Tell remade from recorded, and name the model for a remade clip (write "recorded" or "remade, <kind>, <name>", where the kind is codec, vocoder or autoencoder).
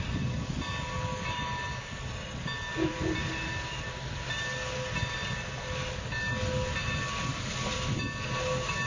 recorded